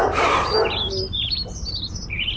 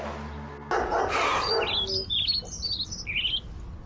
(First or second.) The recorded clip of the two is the second